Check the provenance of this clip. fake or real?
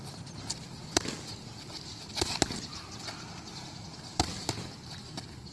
real